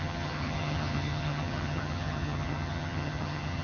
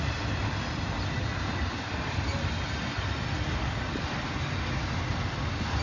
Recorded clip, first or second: second